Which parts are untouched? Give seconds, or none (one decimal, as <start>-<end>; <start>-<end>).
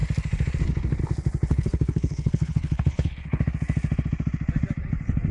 0.0-1.5; 3.4-5.3